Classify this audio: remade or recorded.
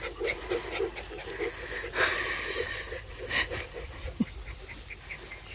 recorded